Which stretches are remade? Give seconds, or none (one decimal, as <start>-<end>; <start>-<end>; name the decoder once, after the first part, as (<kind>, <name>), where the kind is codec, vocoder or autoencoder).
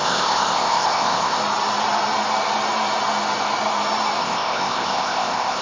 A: 0.0-1.4 (codec, ZipCodec); 4.2-5.6